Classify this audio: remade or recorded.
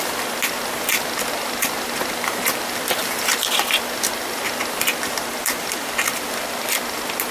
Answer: recorded